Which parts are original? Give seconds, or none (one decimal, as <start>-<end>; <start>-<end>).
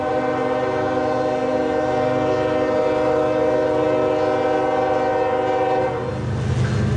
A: 0.0-7.0